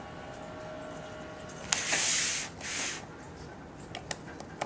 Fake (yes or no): no